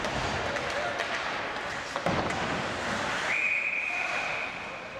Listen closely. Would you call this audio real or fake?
fake